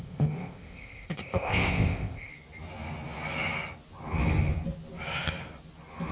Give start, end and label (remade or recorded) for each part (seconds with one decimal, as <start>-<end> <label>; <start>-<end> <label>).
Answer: 0.0-2.3 remade; 2.3-6.1 recorded